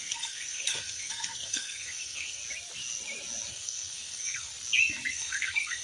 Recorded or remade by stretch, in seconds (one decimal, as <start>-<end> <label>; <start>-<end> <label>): 0.0-2.4 remade; 2.4-3.5 recorded; 3.5-4.5 remade; 4.5-5.1 recorded; 5.1-5.8 remade